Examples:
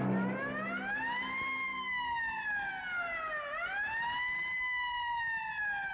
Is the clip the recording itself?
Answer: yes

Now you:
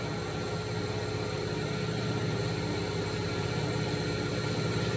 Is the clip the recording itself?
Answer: yes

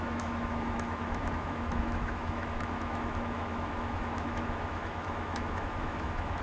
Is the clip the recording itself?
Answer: no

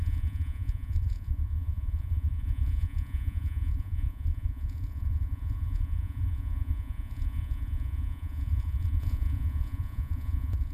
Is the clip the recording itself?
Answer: no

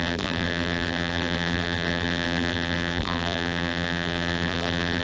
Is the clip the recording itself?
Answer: no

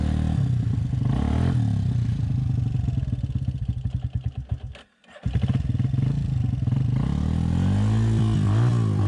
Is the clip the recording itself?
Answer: yes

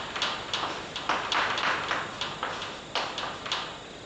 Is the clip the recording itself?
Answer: yes